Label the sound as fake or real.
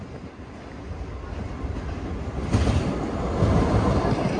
real